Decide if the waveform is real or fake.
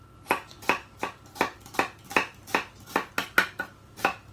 real